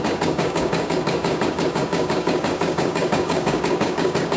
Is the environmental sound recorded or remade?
remade